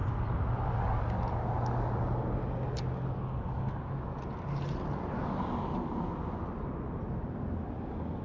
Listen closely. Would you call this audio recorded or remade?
recorded